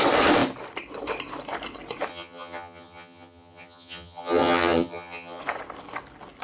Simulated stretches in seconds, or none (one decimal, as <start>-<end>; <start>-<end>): 2.1-5.4